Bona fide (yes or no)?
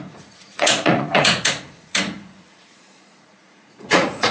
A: no